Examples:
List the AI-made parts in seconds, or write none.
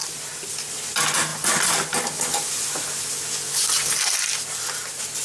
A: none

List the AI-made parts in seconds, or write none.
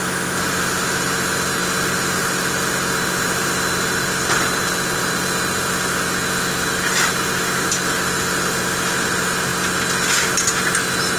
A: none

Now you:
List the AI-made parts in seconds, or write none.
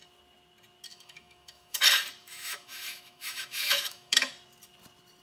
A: 0.9-1.8; 2.2-4.3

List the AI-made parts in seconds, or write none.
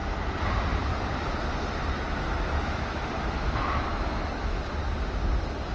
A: 1.9-4.8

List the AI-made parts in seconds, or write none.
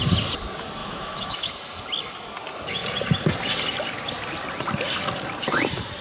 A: 0.8-1.5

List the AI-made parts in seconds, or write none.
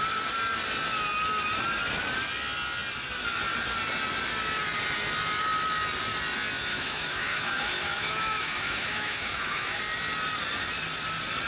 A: 6.7-9.8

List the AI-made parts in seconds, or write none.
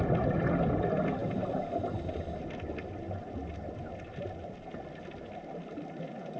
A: none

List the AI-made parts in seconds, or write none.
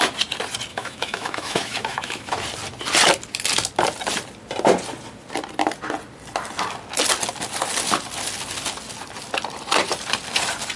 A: 0.7-2.3